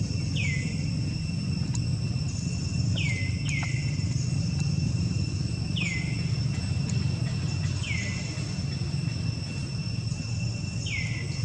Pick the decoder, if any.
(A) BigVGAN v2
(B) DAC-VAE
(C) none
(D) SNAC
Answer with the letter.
C